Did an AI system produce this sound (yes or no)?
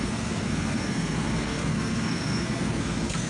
yes